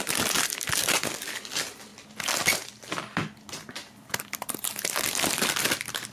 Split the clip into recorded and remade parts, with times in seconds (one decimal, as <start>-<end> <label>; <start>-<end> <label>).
0.0-6.1 recorded